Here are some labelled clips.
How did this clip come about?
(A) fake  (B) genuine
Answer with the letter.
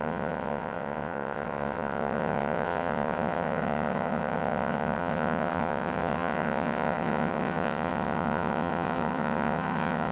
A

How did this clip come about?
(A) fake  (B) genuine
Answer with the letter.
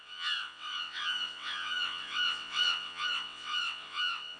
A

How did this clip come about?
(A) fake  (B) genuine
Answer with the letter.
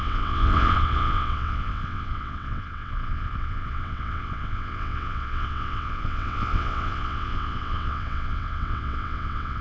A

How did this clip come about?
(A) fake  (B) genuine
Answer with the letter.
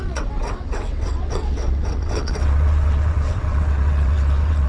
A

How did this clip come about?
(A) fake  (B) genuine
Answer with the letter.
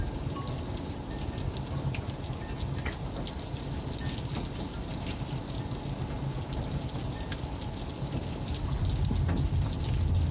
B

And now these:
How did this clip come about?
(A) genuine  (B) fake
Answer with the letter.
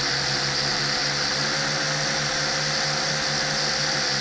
A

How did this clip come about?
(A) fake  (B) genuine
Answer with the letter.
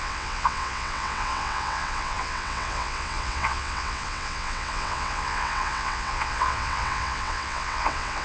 A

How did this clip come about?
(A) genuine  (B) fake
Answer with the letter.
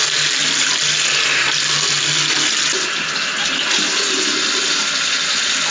A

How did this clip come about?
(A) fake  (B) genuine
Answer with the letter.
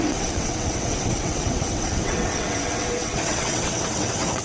A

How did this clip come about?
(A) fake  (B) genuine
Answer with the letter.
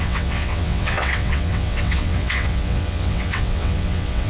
A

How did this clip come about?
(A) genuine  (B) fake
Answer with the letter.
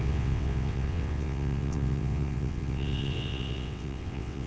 B